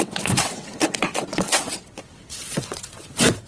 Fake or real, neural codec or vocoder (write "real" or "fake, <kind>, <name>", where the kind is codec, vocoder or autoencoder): fake, vocoder, WaveNeXt